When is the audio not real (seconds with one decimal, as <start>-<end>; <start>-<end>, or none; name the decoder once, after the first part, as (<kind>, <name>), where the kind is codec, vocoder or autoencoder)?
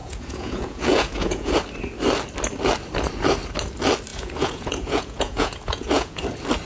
0.0-1.6 (vocoder, Vocos); 4.1-6.2